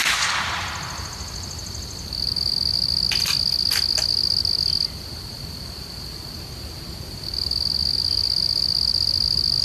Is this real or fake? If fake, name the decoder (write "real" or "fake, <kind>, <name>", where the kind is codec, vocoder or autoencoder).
real